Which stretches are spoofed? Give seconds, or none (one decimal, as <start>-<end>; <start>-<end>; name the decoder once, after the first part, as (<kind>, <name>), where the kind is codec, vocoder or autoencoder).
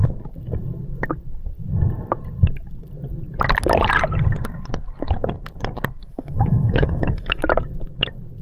6.0-7.4 (autoencoder, DAC-VAE)